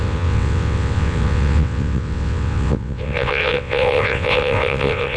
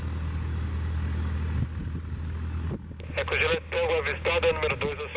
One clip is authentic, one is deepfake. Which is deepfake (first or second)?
first